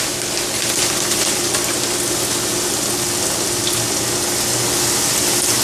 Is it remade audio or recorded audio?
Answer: recorded